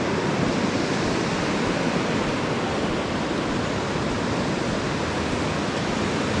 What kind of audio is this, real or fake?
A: real